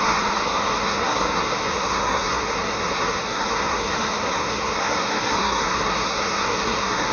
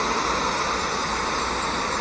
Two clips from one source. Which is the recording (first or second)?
second